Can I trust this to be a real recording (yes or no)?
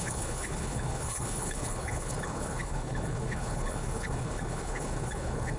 no